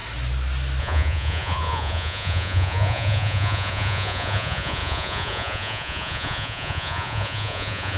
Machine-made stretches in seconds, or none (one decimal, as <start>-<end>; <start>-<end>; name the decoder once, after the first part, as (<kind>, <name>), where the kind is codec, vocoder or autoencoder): 0.8-8.0 (vocoder, Vocos)